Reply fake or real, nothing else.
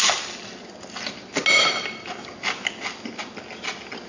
real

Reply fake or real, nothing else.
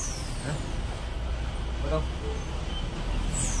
real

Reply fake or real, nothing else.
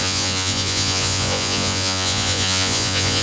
fake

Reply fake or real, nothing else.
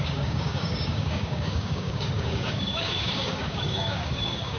fake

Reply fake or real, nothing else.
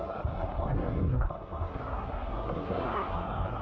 fake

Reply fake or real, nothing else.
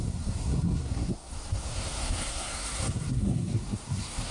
fake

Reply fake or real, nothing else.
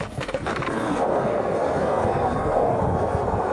fake